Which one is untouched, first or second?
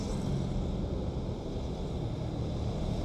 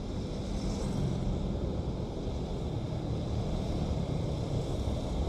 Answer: first